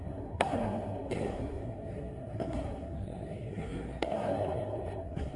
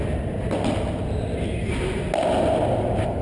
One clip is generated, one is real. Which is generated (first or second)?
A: first